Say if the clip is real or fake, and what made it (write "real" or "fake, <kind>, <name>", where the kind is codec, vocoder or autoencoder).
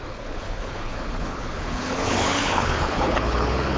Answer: fake, codec, HILCodec